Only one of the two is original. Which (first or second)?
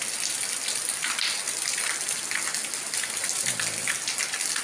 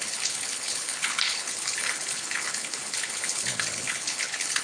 first